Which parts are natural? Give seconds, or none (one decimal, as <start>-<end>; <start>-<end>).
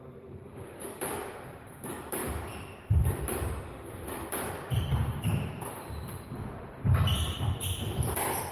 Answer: 6.1-7.6